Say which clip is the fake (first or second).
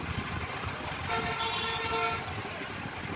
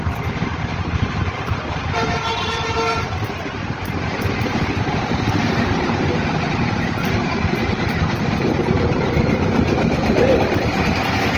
second